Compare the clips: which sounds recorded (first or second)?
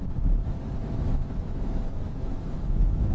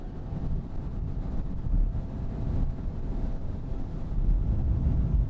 second